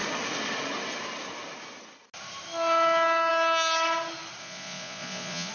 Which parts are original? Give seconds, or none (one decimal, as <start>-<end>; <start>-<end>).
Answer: 0.0-4.4